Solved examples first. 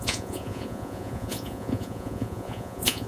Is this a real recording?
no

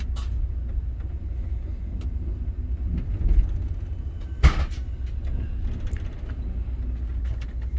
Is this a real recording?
yes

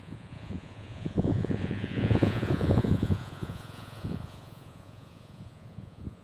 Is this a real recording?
no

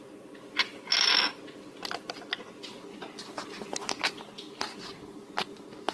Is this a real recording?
yes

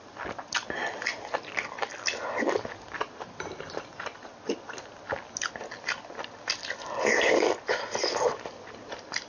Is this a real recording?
yes